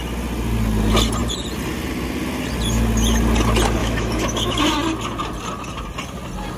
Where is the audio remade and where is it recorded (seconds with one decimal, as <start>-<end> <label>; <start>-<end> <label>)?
0.0-3.8 recorded; 3.8-4.6 remade; 4.6-6.6 recorded